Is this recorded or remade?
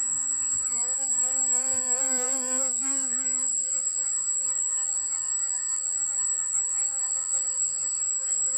remade